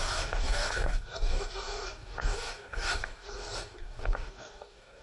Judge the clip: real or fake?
fake